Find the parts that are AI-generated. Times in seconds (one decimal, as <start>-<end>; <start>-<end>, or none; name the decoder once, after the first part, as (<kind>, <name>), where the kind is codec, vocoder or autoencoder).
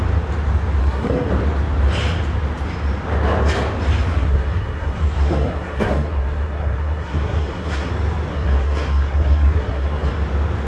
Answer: 0.8-1.3 (codec, SNAC); 4.1-7.9; 8.3-10.1